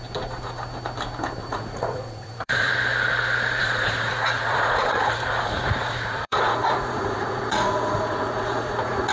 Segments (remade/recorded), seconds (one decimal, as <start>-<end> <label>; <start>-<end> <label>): 0.0-1.4 recorded; 1.4-2.7 remade; 2.7-3.6 recorded; 3.6-9.1 remade

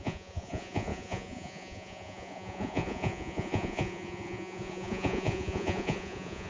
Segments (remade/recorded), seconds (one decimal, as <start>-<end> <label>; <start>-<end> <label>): 0.0-6.5 remade

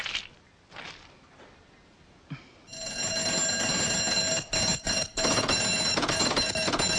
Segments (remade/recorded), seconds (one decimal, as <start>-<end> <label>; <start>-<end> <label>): 0.0-7.0 recorded

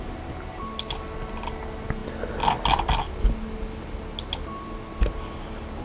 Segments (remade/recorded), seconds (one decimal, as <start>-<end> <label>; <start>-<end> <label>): 0.0-5.8 recorded

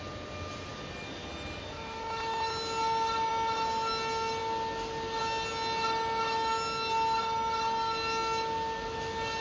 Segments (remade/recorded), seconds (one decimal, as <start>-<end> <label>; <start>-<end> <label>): 0.0-9.4 recorded

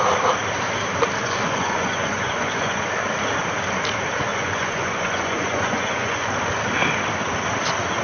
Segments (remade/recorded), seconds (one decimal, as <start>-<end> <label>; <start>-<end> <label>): 0.0-1.2 recorded; 1.2-2.8 remade; 2.8-4.3 recorded; 4.3-6.3 remade; 6.3-8.0 recorded